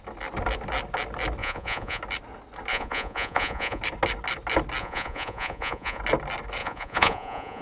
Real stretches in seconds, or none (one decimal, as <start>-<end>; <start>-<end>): 0.0-1.4; 2.0-2.7; 3.8-4.8; 6.0-6.6